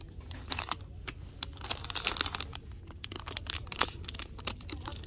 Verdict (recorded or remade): recorded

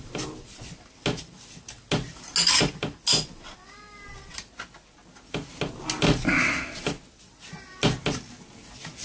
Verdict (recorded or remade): recorded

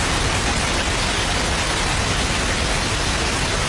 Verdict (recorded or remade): recorded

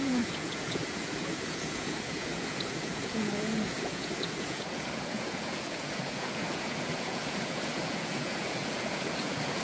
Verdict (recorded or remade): remade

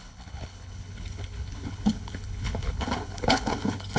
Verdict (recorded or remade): remade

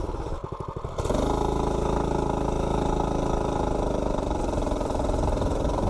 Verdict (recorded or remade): recorded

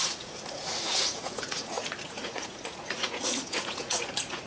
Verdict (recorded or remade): remade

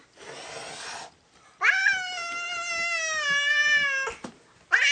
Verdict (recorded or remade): recorded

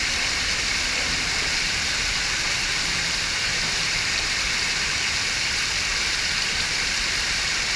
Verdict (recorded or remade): remade